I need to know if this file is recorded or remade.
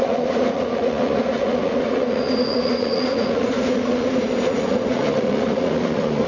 remade